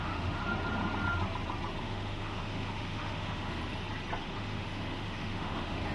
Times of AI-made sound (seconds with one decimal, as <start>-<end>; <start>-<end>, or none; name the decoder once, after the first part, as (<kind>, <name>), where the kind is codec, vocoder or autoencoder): 0.0-0.4 (autoencoder, DAC-VAE); 1.8-3.6; 4.2-5.9